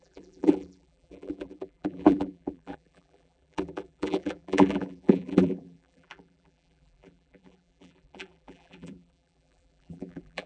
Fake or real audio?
fake